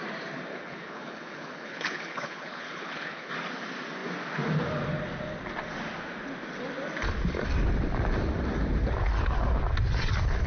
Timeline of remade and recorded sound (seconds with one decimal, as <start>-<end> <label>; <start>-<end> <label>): 0.0-0.5 recorded; 0.5-3.3 remade; 3.3-10.5 recorded